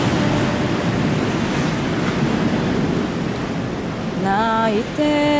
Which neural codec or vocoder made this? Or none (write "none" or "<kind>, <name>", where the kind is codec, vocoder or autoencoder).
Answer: none